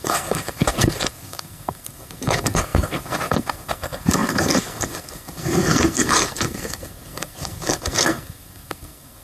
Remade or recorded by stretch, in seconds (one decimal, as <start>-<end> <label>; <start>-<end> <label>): 0.0-9.2 remade